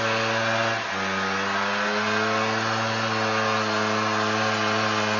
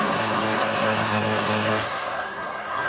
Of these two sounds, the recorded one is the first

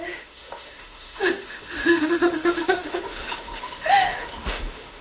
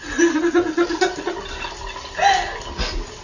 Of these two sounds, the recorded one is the second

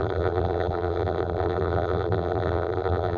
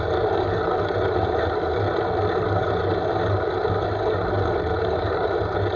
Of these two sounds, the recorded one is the second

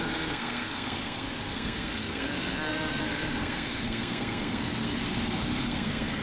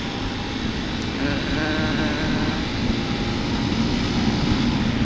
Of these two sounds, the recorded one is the second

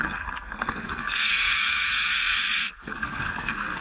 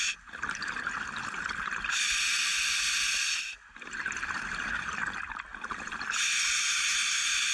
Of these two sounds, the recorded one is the second